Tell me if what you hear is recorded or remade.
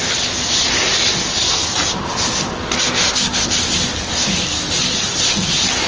recorded